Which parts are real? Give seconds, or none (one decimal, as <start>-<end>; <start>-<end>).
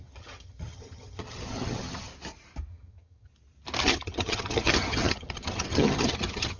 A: 2.1-2.7; 3.3-3.8